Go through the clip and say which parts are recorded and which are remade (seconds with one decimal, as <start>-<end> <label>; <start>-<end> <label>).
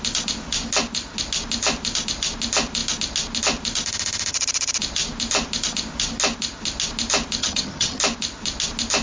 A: 0.0-7.4 recorded; 7.4-8.0 remade; 8.0-9.0 recorded